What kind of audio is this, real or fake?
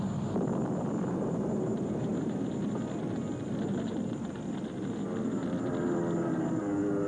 real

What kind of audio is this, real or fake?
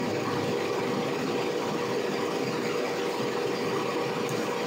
real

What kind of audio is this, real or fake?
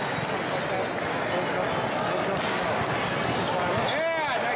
real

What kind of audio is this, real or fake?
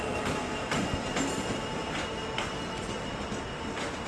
real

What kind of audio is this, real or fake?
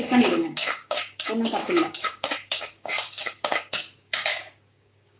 fake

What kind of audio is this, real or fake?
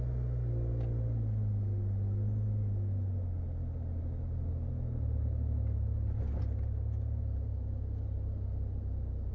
real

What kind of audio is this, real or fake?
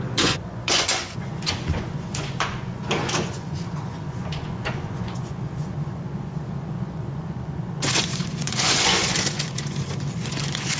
fake